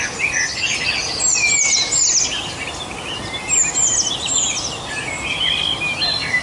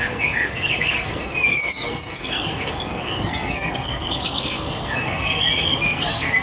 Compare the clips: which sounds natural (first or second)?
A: first